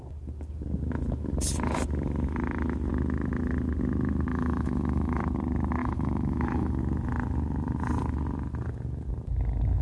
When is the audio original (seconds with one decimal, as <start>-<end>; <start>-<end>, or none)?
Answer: 0.0-4.3; 5.2-5.8; 6.8-9.8